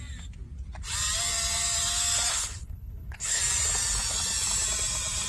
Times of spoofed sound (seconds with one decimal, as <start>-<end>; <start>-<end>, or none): 2.3-3.4